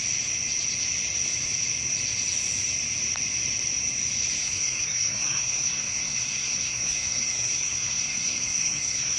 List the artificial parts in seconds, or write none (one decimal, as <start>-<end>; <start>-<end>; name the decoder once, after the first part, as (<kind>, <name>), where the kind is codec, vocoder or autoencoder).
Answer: 4.4-9.2 (codec, SNAC)